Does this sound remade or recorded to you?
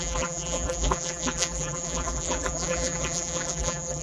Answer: remade